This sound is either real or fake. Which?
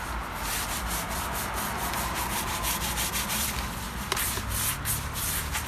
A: real